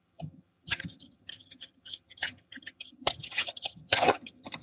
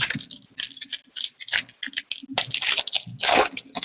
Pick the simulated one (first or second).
first